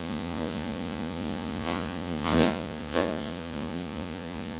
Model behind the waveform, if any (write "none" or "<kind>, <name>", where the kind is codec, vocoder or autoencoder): vocoder, Vocos